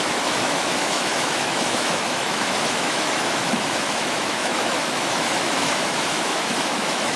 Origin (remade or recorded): remade